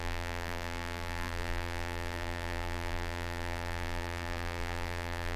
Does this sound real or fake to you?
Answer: fake